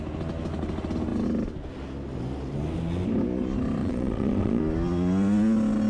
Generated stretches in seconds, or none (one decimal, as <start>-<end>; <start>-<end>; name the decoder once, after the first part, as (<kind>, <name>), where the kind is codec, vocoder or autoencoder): 3.8-4.6 (vocoder, Vocos)